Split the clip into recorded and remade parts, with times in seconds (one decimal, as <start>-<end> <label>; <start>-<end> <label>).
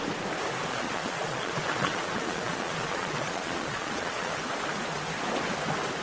0.0-0.7 recorded; 0.7-4.3 remade; 4.3-6.0 recorded